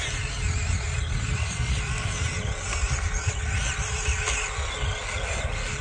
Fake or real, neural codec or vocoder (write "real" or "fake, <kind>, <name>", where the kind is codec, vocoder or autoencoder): real